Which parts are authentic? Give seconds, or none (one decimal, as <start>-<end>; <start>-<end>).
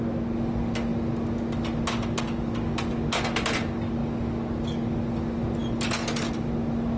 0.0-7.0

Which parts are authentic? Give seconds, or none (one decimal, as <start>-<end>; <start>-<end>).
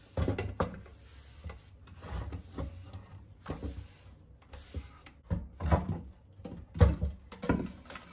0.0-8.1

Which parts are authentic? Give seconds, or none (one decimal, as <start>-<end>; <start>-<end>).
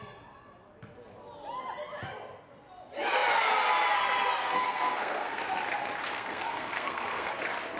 0.0-4.4; 5.4-6.0; 7.3-7.8